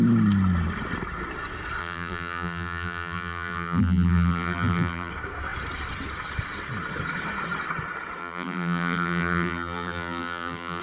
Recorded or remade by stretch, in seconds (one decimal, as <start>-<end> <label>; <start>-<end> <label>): 0.0-1.8 recorded; 1.8-5.1 remade; 5.1-8.2 recorded; 8.2-10.8 remade